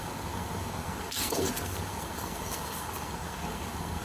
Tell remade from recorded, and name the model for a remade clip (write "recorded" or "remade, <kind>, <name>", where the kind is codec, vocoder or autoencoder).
remade, codec, SNAC